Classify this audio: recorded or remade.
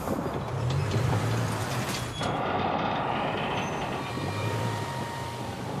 remade